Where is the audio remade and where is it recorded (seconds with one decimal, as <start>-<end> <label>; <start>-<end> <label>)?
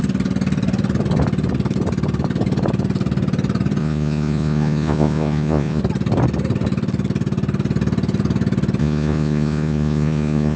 0.0-3.8 recorded; 3.8-5.8 remade; 5.8-8.8 recorded; 8.8-10.6 remade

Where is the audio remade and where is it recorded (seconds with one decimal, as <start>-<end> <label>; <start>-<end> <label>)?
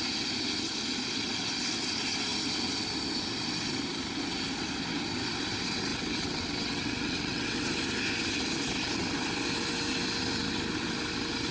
0.0-5.9 recorded; 5.9-7.7 remade; 7.7-11.5 recorded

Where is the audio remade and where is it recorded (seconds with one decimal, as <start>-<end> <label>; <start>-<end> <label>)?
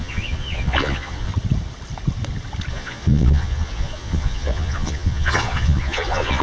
0.0-1.3 remade; 1.3-2.7 recorded; 2.7-6.4 remade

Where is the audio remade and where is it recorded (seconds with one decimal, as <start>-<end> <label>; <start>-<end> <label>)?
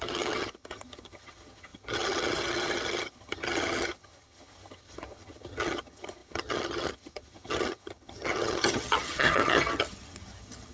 0.0-10.7 remade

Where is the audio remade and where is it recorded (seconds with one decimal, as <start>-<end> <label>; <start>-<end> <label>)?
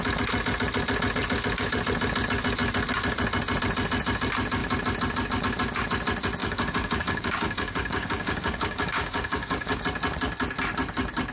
0.0-6.4 recorded; 6.4-9.8 remade; 9.8-11.3 recorded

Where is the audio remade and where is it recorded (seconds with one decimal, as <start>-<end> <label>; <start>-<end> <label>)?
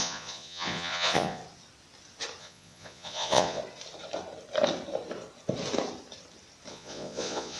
0.0-1.4 remade; 1.4-2.4 recorded; 2.4-3.6 remade; 3.6-6.7 recorded; 6.7-7.6 remade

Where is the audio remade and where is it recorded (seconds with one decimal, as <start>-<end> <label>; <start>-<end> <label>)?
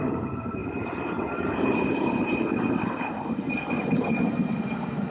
0.0-5.1 remade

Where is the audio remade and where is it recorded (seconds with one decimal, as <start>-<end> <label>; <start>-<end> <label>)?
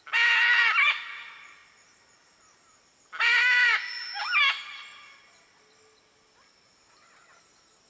0.0-7.9 recorded